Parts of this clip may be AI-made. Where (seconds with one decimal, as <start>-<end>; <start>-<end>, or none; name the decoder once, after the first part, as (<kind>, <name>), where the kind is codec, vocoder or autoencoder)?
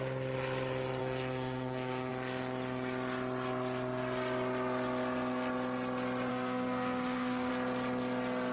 1.0-2.1 (codec, SNAC); 6.3-7.5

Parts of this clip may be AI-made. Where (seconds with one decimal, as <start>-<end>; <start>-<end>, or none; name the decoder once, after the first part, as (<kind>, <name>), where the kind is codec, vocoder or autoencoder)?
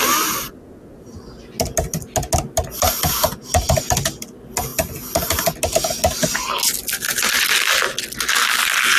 none